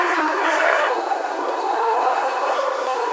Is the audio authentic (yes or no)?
no